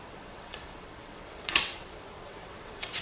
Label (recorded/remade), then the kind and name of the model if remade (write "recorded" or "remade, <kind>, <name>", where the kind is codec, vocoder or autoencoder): remade, vocoder, WaveNeXt